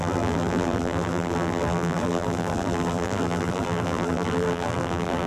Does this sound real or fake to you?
fake